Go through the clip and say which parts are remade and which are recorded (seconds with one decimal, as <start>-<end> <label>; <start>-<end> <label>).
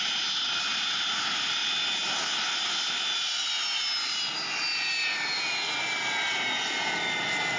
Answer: 0.0-7.6 recorded